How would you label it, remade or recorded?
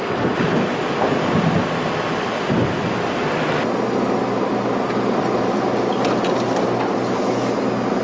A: recorded